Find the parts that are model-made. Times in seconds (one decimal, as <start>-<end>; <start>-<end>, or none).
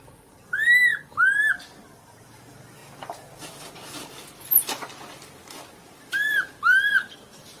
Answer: none